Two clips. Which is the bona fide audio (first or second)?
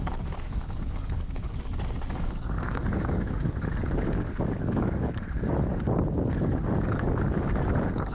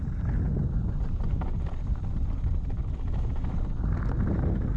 second